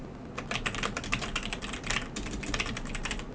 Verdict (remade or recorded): recorded